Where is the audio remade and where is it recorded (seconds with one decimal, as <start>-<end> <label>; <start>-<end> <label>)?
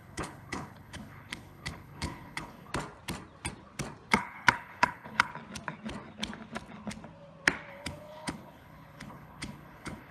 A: 0.0-2.7 remade; 2.7-4.1 recorded; 4.1-5.3 remade; 5.3-7.7 recorded; 7.7-10.1 remade